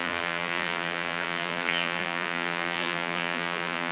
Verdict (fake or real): fake